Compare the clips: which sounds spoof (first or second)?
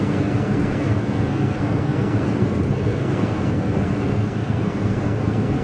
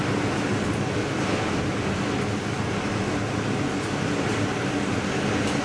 first